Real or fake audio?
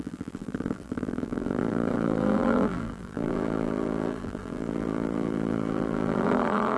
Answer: fake